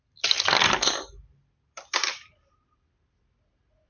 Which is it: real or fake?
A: real